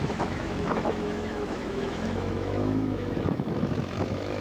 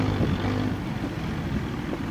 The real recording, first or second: second